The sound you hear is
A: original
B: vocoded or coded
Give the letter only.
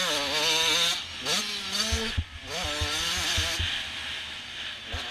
A